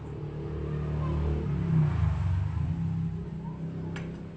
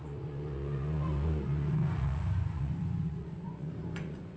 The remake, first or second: second